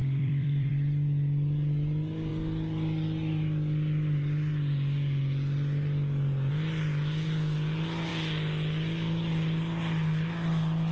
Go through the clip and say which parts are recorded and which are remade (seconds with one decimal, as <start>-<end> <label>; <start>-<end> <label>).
0.0-0.7 remade; 0.7-10.9 recorded